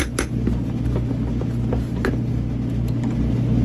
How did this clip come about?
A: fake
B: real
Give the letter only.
B